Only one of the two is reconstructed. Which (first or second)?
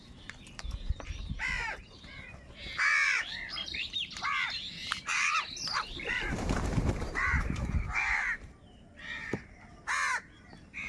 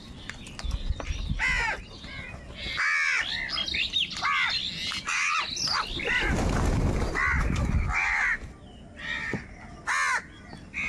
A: first